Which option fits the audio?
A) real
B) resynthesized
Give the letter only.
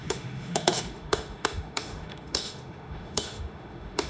B